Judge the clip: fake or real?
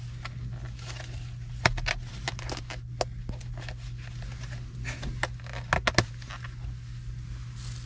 real